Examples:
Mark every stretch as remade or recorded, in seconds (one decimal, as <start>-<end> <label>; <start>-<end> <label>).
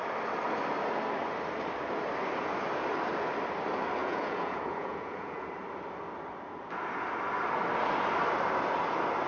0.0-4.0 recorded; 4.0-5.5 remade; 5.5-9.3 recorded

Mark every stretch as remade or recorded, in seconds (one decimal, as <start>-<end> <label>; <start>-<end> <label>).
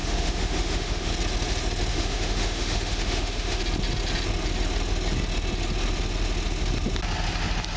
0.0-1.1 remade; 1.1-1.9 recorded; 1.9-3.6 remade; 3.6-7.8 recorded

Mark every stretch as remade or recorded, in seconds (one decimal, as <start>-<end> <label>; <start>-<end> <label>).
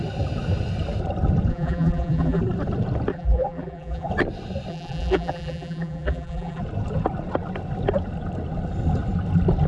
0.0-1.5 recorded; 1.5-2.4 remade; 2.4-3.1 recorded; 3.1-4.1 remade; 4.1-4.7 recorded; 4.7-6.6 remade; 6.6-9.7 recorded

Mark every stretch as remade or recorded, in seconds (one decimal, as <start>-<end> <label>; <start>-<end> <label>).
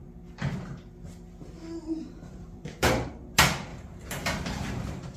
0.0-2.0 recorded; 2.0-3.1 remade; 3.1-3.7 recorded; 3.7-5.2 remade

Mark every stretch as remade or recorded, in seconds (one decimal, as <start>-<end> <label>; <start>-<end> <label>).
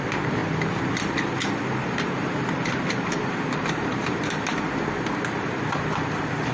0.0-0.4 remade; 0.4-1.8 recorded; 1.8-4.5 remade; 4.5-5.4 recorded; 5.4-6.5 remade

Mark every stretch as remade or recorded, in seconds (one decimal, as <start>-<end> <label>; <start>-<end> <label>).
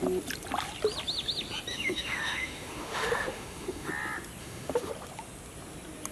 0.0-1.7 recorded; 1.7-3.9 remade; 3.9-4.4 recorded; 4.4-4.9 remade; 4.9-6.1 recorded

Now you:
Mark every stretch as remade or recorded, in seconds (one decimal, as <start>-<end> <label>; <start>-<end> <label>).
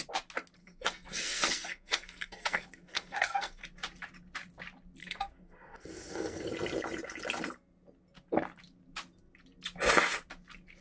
0.0-0.6 recorded; 0.6-3.6 remade; 3.6-5.0 recorded; 5.0-6.5 remade; 6.5-10.8 recorded